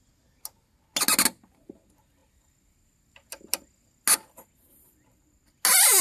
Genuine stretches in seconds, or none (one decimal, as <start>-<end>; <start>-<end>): 0.0-6.0